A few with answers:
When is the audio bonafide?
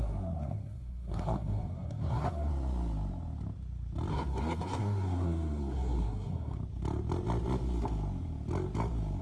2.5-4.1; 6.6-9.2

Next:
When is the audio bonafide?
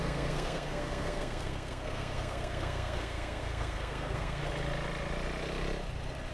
4.4-6.3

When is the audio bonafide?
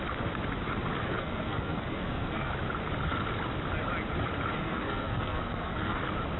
0.0-1.0; 2.5-4.5; 6.0-6.4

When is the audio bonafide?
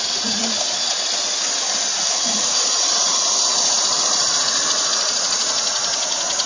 0.4-1.9; 3.5-4.4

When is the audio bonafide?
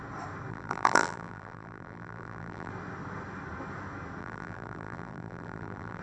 0.0-0.5; 2.7-4.2